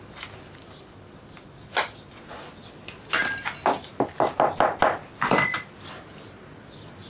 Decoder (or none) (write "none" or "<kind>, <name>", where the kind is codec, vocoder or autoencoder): none